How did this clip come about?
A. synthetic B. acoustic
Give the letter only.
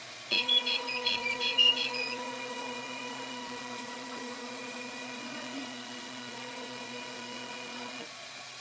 A